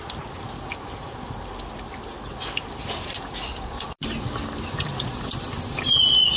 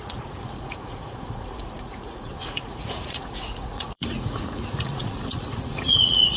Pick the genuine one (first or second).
first